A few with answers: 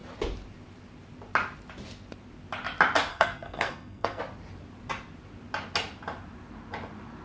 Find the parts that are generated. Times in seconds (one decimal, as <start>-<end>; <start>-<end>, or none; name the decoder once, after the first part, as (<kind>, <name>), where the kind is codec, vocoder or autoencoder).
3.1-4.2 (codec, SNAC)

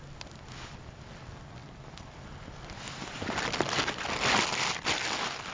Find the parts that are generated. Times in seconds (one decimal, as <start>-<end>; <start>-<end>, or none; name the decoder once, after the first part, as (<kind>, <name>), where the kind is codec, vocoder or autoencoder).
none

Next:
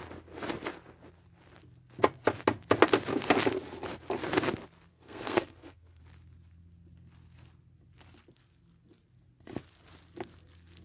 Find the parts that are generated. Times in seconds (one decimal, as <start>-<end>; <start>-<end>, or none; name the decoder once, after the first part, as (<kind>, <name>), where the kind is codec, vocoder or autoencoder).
4.9-6.0 (codec, SNAC)

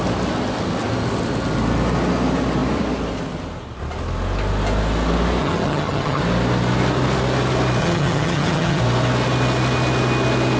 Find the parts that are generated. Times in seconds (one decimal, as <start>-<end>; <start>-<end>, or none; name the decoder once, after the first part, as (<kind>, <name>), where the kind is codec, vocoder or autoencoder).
5.4-6.2 (vocoder, HiFi-GAN); 7.8-8.8